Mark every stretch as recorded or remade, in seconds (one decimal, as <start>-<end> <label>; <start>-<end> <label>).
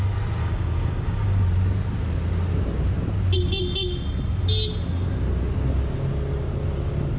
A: 0.0-0.4 recorded; 0.4-1.4 remade; 1.4-7.2 recorded